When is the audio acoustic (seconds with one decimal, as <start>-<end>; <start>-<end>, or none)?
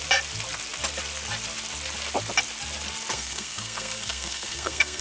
0.0-3.1